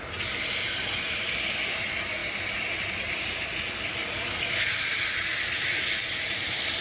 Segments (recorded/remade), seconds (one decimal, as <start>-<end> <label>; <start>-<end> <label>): 0.0-6.8 recorded